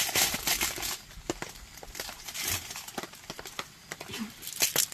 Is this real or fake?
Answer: real